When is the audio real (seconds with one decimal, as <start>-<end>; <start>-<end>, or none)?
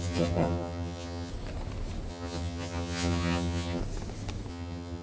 1.3-2.1; 3.8-4.5